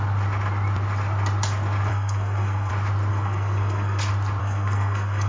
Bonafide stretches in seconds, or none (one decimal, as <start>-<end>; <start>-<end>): 0.0-1.9; 2.7-3.1; 4.0-4.4